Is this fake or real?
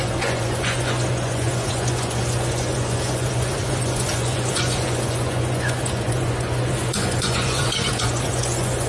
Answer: fake